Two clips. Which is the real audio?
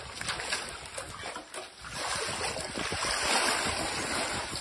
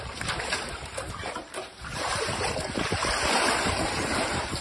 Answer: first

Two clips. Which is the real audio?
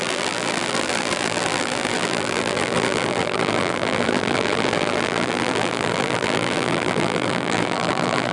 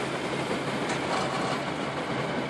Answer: second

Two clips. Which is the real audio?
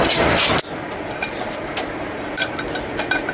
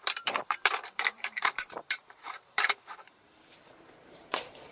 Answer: first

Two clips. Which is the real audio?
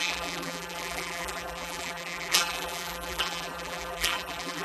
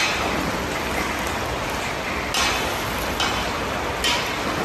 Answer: second